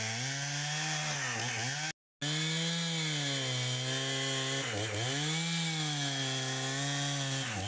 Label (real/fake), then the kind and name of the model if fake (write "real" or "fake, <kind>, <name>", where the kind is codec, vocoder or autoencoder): real